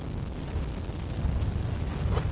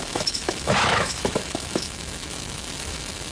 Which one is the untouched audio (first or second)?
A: first